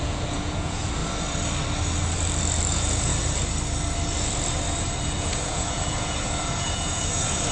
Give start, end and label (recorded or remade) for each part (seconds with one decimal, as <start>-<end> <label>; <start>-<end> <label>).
0.0-1.0 remade; 1.0-2.7 recorded; 2.7-3.1 remade; 3.1-5.2 recorded; 5.2-7.5 remade